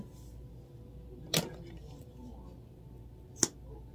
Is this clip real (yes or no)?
yes